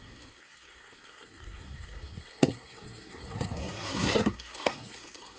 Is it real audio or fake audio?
fake